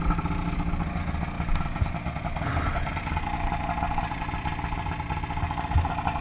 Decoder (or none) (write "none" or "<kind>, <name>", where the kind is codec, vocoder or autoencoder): none